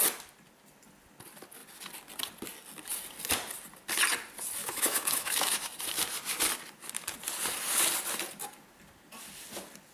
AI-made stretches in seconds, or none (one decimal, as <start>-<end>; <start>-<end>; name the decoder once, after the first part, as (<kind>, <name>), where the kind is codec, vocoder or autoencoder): 4.6-5.7 (autoencoder, DAC-VAE)